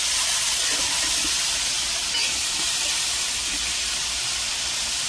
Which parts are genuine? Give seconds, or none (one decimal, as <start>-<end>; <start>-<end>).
0.0-2.4; 4.0-5.1